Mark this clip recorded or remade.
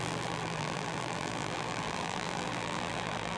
remade